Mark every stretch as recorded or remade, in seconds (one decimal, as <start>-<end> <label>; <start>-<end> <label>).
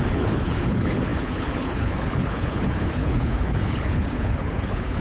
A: 0.0-5.0 remade